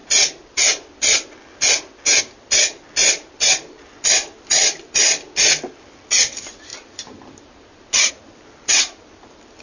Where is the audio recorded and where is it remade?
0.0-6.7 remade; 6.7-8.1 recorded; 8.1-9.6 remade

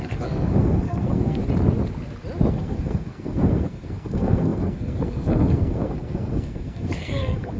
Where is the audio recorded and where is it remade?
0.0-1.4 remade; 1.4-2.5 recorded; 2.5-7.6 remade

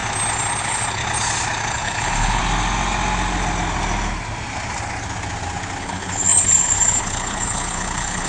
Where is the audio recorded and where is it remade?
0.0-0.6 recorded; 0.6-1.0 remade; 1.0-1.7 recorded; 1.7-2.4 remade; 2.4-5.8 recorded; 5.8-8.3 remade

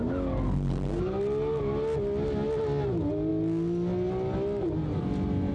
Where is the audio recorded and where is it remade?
0.0-5.5 recorded